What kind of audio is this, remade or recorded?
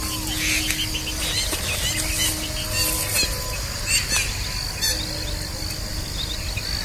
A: recorded